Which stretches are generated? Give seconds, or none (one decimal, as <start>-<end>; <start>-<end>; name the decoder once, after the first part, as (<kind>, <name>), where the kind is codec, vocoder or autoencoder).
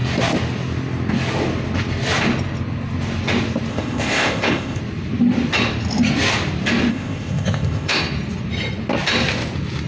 3.7-4.8 (codec, ZipCodec); 6.9-8.0